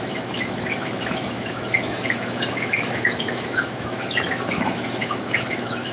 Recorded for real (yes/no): no